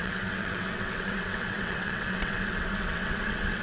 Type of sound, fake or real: fake